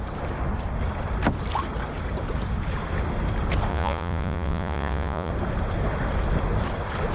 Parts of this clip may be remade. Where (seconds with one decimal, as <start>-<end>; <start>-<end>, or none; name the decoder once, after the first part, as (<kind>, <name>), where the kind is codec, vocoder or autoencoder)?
3.7-5.3 (vocoder, Vocos)